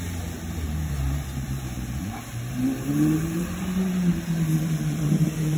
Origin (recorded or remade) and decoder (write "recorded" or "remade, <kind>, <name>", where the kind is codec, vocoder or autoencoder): remade, vocoder, BigVGAN v2